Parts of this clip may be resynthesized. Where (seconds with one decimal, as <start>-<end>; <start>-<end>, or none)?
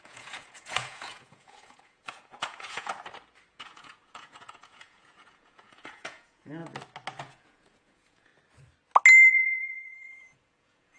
0.0-2.9; 3.5-6.6; 7.2-8.3; 9.3-11.0